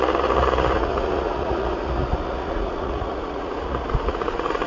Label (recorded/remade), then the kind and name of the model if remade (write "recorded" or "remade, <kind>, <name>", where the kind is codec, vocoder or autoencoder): remade, vocoder, Vocos